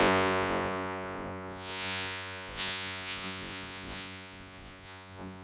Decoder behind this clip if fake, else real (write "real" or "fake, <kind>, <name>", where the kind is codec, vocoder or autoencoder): fake, vocoder, Vocos